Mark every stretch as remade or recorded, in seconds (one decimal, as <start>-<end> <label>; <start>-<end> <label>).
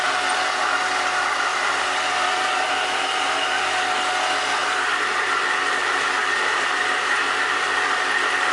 0.0-1.5 recorded; 1.5-3.3 remade; 3.3-4.6 recorded; 4.6-5.4 remade; 5.4-6.2 recorded; 6.2-7.2 remade; 7.2-8.5 recorded